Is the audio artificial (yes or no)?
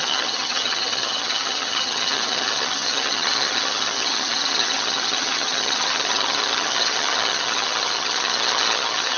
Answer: yes